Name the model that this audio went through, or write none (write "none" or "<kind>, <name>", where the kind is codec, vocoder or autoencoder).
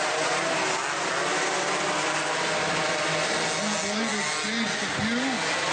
none